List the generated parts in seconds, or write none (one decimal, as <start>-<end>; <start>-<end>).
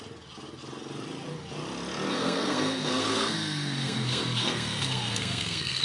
2.1-5.8